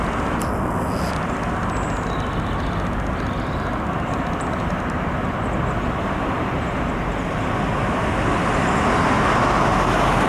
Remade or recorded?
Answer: recorded